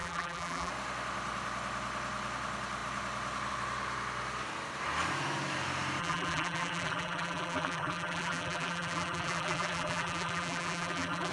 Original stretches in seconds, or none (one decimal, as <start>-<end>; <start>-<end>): 0.7-6.0